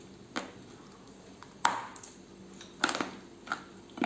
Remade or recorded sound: recorded